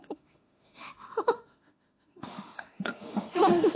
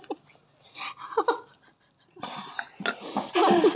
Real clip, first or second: second